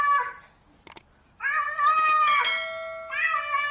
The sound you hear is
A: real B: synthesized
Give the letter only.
A